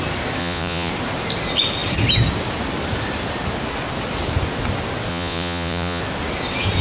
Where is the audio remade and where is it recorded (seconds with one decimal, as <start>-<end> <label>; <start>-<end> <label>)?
0.0-0.4 recorded; 0.4-0.9 remade; 0.9-5.1 recorded; 5.1-6.0 remade; 6.0-6.8 recorded